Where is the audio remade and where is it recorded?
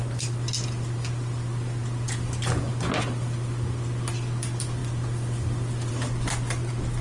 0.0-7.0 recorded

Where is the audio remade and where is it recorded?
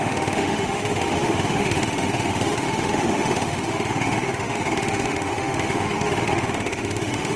0.0-7.4 remade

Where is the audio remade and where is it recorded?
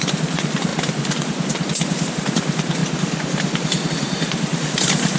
0.0-2.8 remade; 2.8-3.9 recorded; 3.9-5.2 remade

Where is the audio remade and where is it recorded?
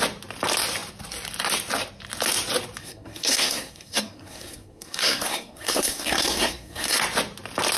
0.0-2.8 recorded; 2.8-7.0 remade; 7.0-7.8 recorded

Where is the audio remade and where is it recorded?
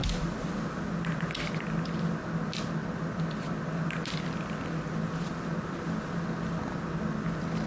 0.0-7.7 recorded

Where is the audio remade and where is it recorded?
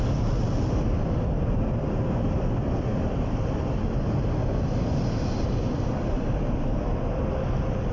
0.0-7.9 recorded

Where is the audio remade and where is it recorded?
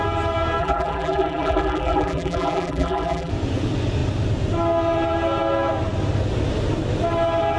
0.0-0.6 recorded; 0.6-3.3 remade; 3.3-7.6 recorded